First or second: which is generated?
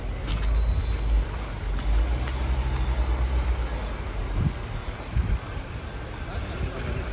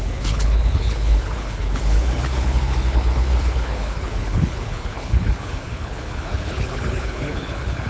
second